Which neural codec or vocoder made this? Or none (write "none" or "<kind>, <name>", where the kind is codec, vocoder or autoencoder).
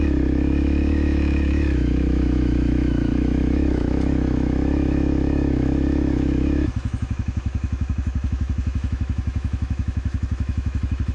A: autoencoder, DAC-VAE